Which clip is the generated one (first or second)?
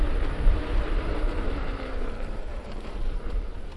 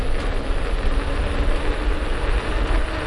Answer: first